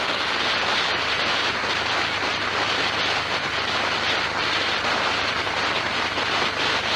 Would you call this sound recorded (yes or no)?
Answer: yes